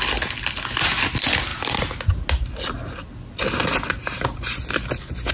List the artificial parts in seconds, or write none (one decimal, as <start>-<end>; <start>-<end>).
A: none